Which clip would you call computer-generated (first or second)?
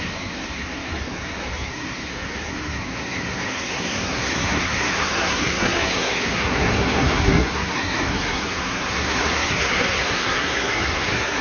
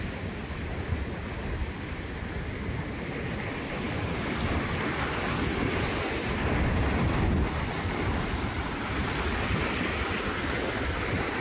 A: first